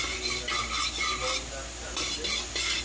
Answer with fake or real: real